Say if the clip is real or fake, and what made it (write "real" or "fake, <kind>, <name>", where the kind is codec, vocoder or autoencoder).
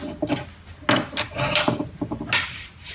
real